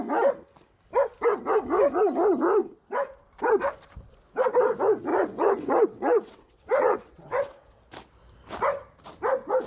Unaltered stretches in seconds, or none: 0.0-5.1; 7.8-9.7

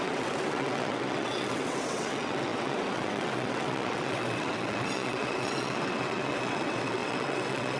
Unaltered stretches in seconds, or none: none

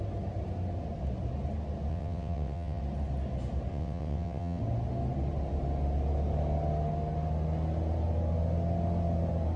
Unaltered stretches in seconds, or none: 0.0-1.9; 2.8-3.7; 4.6-9.6

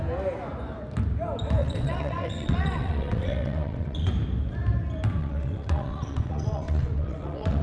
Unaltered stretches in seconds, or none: 0.0-1.6; 4.1-5.2

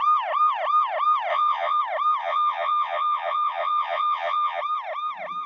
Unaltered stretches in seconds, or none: 0.0-1.3; 1.8-2.2; 4.6-5.5

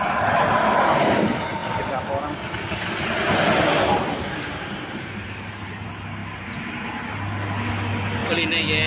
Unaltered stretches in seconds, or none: 0.0-8.9

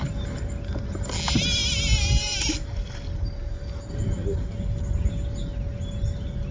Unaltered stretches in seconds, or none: 0.0-6.5

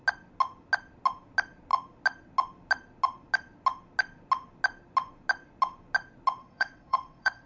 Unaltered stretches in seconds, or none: 0.0-6.4